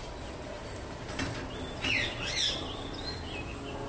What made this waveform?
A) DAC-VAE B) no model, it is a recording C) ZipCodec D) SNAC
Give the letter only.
B